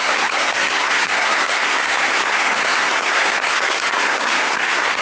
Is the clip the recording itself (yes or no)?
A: no